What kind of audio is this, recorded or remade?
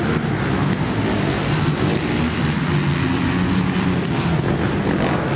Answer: recorded